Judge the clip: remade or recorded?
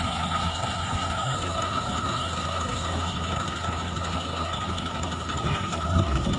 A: remade